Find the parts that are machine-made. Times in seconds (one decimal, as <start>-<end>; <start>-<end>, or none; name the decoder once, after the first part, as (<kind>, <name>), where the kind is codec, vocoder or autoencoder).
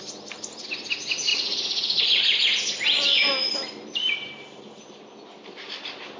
1.3-2.0 (vocoder, Vocos)